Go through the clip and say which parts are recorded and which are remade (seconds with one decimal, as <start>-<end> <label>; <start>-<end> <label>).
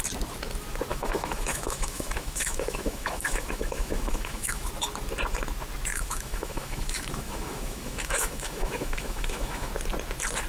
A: 0.0-0.9 recorded; 0.9-4.7 remade; 4.7-5.9 recorded; 5.9-9.7 remade; 9.7-10.5 recorded